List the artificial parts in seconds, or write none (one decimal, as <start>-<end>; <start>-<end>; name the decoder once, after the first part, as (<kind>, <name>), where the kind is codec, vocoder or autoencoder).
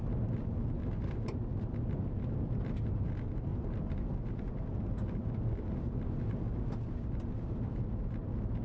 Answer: none